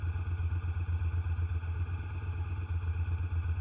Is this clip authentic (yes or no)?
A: yes